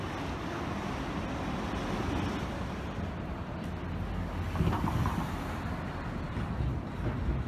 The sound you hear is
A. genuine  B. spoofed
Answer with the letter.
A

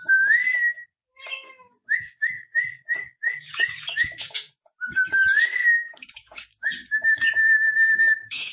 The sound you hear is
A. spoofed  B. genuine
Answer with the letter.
A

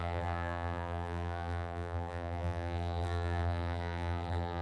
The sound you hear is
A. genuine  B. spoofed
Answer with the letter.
B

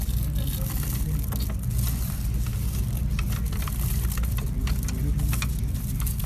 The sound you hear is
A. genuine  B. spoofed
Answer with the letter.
A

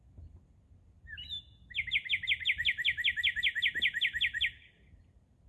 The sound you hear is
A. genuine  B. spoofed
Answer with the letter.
A